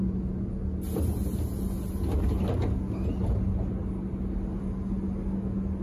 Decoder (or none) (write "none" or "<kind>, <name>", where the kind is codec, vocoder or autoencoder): none